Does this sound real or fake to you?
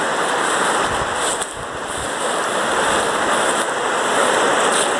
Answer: real